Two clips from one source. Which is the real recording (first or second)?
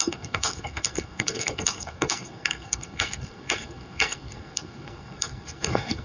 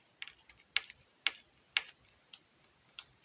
second